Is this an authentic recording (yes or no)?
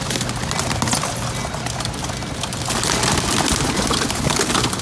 yes